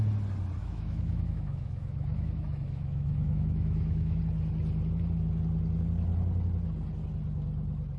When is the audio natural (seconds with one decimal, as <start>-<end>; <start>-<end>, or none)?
0.0-0.6; 4.2-8.0